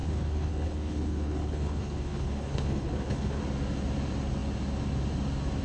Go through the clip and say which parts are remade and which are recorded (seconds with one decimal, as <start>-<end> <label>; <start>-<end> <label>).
0.0-3.4 remade; 3.4-5.6 recorded